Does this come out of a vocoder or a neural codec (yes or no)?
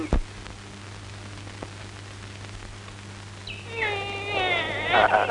no